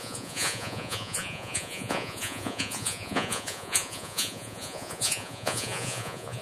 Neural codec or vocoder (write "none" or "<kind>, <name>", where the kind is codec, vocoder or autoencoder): vocoder, Vocos